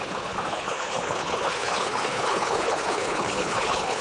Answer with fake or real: fake